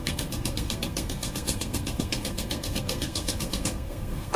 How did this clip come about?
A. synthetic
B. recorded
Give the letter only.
A